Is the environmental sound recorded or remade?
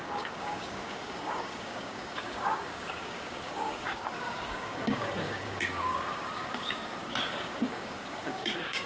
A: remade